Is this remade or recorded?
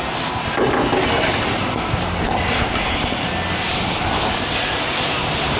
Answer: recorded